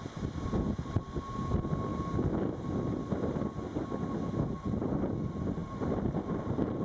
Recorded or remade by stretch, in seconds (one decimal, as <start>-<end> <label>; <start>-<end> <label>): 0.0-6.8 recorded